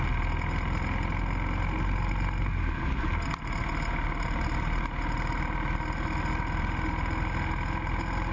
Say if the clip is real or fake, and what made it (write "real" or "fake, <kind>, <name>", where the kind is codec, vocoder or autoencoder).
real